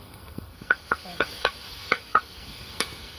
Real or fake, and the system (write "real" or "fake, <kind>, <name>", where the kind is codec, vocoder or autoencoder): fake, codec, SNAC